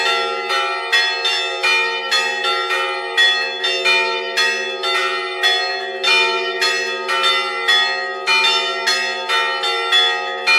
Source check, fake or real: real